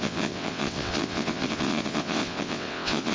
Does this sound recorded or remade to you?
remade